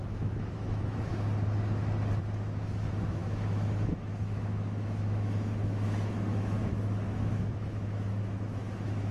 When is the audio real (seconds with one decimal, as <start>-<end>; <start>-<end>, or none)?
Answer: 1.1-2.2